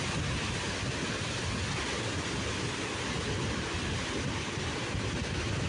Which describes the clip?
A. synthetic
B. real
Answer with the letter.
B